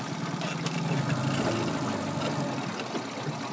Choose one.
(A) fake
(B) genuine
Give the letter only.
B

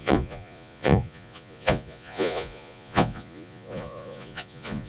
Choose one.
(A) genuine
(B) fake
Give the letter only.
B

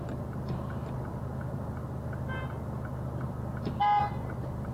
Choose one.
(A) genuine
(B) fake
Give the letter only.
A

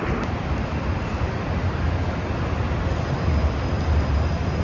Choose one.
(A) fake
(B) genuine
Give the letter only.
B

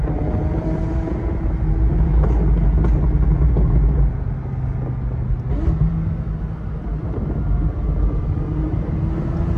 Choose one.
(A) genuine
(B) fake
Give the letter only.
A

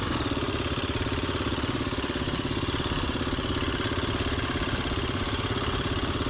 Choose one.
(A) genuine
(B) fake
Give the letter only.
A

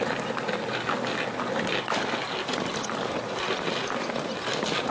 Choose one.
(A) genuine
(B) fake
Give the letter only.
A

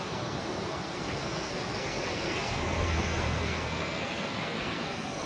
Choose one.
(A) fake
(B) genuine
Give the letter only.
A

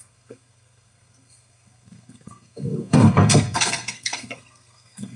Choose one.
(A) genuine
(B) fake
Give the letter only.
B